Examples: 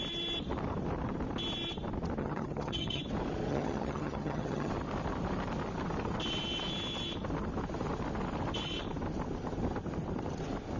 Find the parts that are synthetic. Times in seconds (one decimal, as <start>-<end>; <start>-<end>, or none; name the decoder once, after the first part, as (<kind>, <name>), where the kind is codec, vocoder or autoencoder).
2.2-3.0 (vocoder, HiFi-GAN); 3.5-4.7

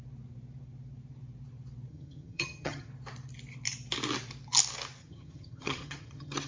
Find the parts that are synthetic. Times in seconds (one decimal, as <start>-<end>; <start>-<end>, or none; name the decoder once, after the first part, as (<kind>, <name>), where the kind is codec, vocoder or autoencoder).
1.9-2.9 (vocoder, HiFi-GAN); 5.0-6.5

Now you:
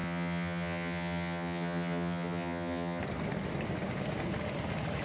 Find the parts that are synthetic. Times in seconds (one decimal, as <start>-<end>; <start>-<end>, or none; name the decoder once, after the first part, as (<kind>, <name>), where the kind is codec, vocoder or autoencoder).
0.0-3.0 (vocoder, HiFi-GAN)